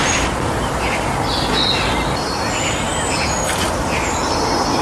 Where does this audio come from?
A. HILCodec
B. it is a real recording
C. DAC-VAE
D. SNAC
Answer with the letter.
B